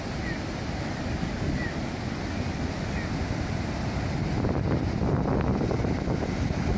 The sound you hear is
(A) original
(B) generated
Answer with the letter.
A